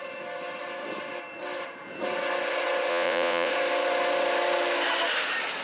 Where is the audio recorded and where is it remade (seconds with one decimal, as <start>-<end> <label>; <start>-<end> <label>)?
0.0-2.9 recorded; 2.9-3.5 remade; 3.5-5.6 recorded